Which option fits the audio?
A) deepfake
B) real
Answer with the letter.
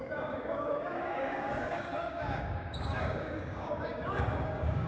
A